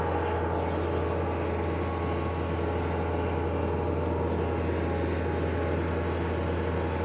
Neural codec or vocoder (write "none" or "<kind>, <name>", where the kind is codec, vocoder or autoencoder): none